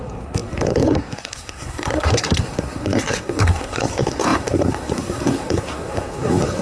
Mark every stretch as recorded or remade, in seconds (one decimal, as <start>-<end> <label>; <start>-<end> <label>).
0.0-6.6 remade